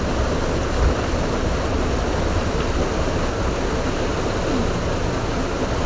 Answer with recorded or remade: recorded